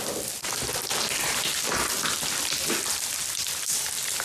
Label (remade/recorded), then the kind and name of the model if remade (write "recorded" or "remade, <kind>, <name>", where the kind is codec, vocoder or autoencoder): recorded